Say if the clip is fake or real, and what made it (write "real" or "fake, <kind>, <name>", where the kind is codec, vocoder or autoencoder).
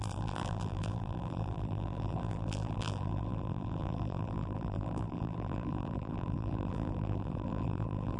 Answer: fake, vocoder, BigVGAN v2